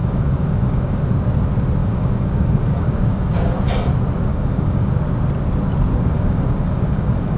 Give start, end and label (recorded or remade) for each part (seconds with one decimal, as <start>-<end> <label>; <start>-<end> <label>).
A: 0.0-1.0 remade; 1.0-1.8 recorded; 1.8-3.6 remade; 3.6-4.3 recorded; 4.3-4.9 remade; 4.9-5.9 recorded; 5.9-7.4 remade